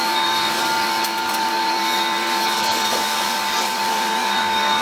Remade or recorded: remade